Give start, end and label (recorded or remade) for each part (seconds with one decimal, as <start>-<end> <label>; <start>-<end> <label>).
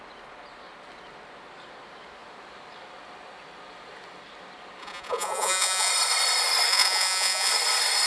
0.0-4.8 recorded; 4.8-5.9 remade; 5.9-6.7 recorded; 6.7-7.5 remade; 7.5-8.1 recorded